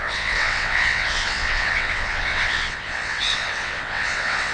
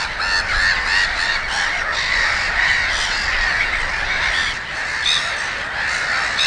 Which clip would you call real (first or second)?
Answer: second